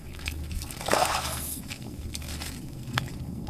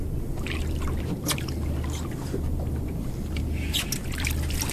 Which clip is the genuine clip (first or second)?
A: second